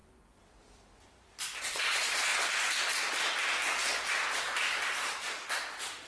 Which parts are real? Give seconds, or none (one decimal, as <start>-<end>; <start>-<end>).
0.0-1.6; 2.3-6.1